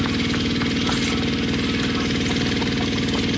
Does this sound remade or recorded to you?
recorded